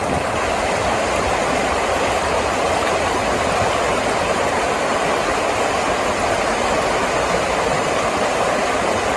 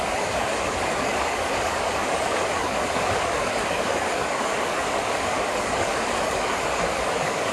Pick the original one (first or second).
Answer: first